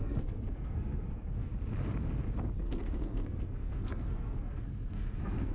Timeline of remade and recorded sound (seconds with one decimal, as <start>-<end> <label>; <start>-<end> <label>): 0.0-1.5 remade; 1.5-2.6 recorded; 2.6-5.5 remade